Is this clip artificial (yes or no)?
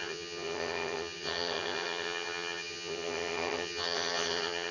yes